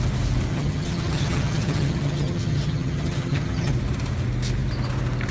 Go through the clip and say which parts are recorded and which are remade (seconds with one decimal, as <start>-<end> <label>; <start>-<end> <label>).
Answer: 0.0-0.5 recorded; 0.5-3.7 remade; 3.7-5.3 recorded